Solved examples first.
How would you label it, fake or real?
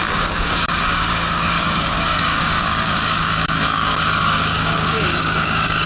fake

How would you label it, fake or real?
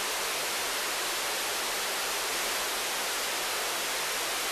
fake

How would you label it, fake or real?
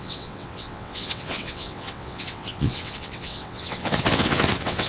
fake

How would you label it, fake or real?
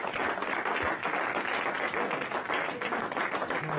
real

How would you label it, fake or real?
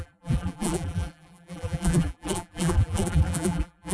fake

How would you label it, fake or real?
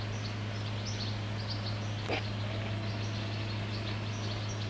real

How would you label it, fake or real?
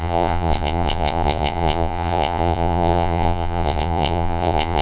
fake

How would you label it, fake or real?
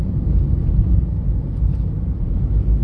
real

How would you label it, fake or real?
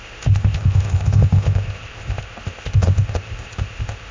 fake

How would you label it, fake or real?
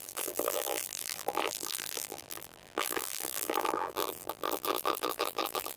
fake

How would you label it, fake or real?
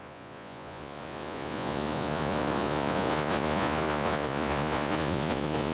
fake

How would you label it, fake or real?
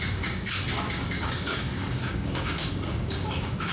fake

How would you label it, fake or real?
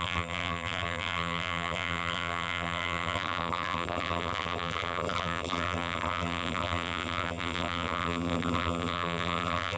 fake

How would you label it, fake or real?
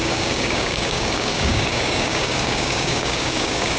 fake